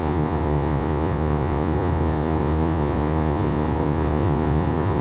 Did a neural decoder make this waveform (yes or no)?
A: yes